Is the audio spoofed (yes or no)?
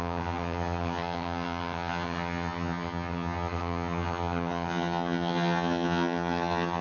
yes